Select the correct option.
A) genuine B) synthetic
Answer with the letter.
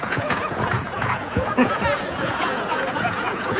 B